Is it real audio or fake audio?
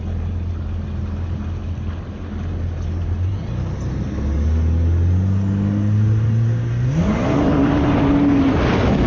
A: real